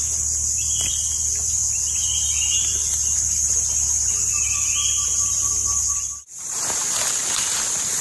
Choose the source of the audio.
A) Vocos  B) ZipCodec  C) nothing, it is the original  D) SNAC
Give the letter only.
C